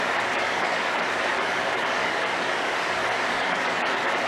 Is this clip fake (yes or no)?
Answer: yes